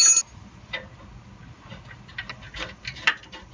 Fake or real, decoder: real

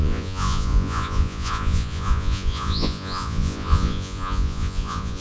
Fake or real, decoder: fake, vocoder, Vocos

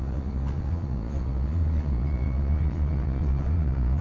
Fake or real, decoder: fake, vocoder, Vocos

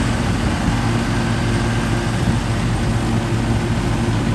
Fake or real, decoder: real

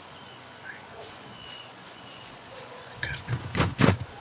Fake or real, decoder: fake, vocoder, Vocos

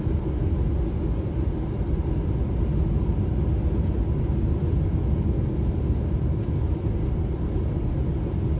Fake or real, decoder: real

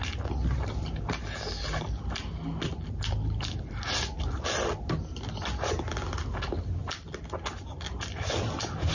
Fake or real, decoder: real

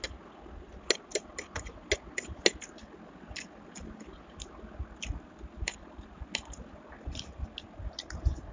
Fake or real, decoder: real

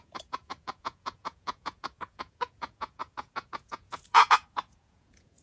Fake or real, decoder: fake, vocoder, Vocos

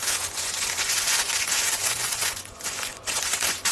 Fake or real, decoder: fake, vocoder, Vocos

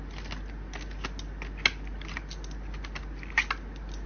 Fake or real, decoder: real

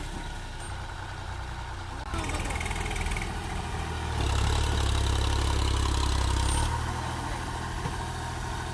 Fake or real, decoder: real